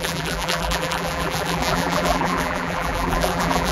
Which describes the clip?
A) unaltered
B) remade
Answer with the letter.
B